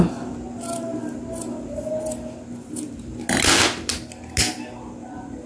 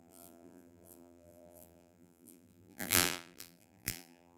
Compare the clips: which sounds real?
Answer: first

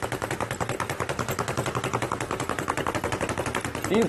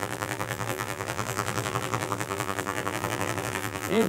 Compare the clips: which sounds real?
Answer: first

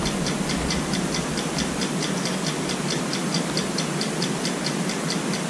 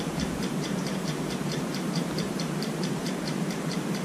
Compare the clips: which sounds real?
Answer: first